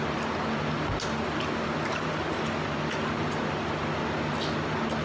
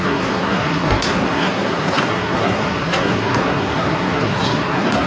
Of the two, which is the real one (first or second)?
first